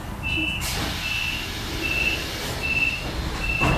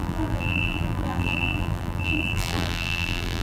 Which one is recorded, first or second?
first